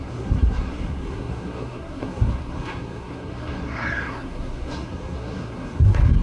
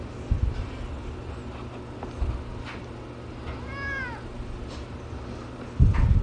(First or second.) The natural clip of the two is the second